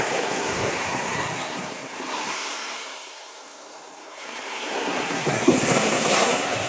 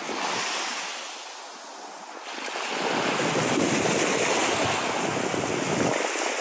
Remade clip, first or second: first